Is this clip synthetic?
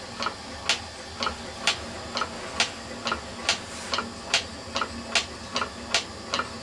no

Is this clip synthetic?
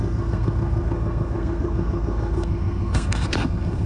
yes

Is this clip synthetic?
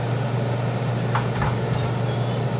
no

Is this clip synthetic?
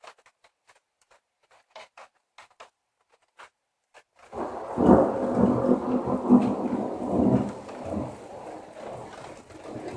no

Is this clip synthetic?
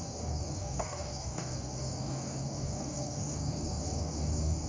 yes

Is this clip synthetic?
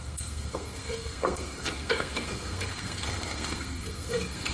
yes